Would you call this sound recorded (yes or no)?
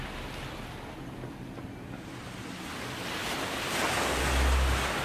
yes